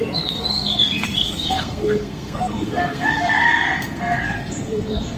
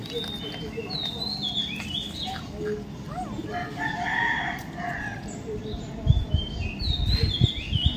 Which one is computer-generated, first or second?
first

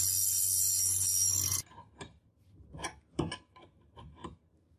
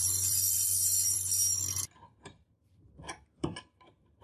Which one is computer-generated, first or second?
second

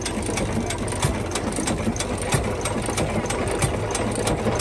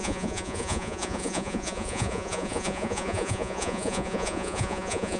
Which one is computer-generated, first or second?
second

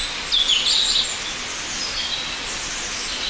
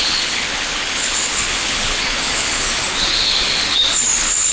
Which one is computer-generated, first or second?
second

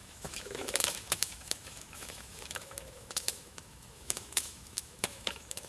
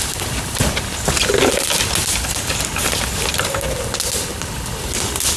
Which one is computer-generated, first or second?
first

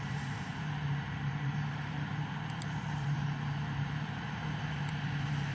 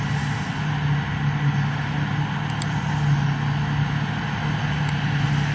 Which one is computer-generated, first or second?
first